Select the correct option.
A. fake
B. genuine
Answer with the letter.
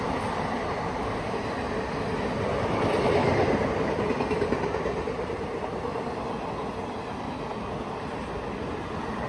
B